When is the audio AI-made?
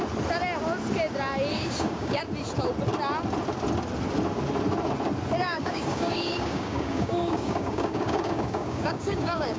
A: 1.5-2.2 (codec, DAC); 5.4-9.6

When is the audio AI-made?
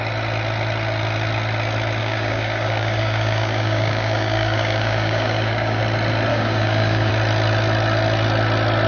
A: 2.0-5.8 (codec, DAC); 6.3-7.1